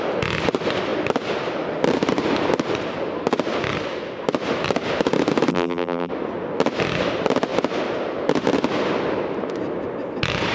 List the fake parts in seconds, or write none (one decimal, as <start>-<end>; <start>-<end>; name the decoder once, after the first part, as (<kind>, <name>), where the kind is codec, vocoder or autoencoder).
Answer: 5.5-6.1 (vocoder, BigVGAN v2)